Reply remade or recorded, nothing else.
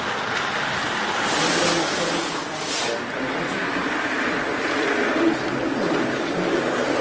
recorded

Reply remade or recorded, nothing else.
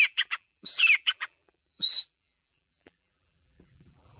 remade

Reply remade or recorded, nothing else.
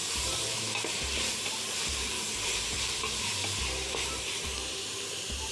remade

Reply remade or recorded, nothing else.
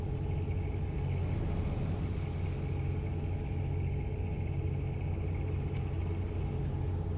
recorded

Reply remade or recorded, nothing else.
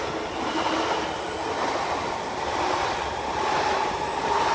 remade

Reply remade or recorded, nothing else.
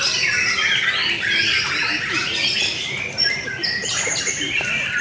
remade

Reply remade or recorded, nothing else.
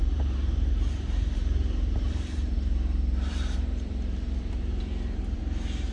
remade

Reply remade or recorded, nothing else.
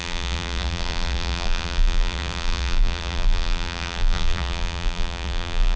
remade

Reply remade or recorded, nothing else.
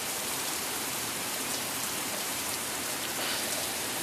remade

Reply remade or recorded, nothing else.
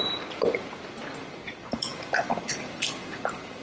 remade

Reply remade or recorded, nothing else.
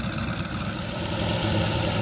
remade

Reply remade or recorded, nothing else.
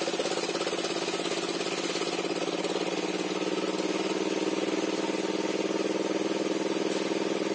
recorded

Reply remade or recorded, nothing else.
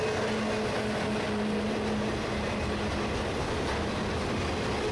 recorded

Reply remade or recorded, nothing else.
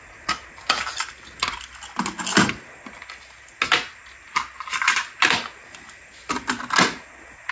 recorded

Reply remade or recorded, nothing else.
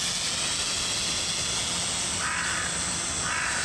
recorded